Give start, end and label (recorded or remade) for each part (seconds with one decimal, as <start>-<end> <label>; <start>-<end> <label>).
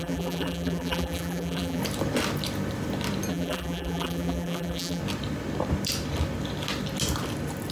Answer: 0.0-1.8 remade; 1.8-3.3 recorded; 3.3-5.0 remade; 5.0-7.7 recorded